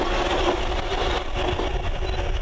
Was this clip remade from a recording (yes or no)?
no